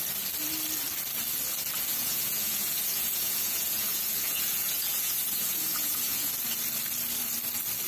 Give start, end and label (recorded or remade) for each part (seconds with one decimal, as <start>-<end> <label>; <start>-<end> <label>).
0.0-1.9 recorded; 1.9-6.3 remade; 6.3-7.9 recorded